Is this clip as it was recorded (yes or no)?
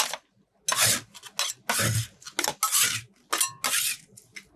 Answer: yes